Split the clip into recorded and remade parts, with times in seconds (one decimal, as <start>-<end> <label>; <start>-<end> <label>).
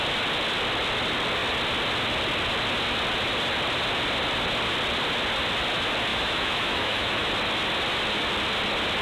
0.0-6.1 recorded; 6.1-7.3 remade; 7.3-9.0 recorded